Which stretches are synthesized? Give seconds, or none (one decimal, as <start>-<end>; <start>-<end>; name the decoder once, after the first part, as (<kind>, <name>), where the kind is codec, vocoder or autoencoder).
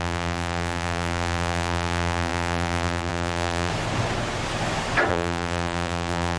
0.0-3.7 (vocoder, BigVGAN v2); 5.1-6.4